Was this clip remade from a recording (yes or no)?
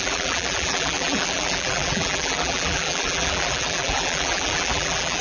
yes